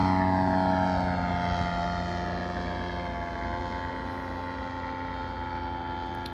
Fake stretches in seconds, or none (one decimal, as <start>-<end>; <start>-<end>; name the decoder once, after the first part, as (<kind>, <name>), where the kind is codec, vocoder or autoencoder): none